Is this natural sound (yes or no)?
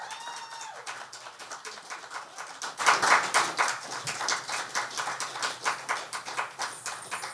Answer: yes